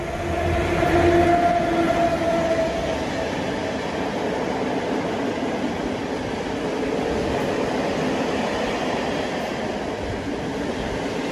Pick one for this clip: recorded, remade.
recorded